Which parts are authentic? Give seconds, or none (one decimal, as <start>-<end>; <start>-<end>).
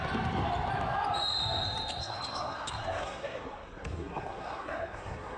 0.0-2.0